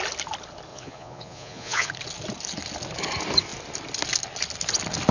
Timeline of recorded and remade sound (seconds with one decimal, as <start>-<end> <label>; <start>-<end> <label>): 0.0-0.7 recorded; 0.7-1.9 remade; 1.9-5.1 recorded